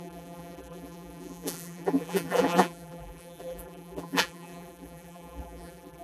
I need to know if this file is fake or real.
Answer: fake